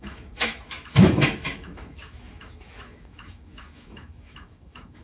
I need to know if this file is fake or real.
fake